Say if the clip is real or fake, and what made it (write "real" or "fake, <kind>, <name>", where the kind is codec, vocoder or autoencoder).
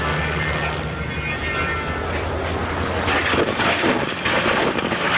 real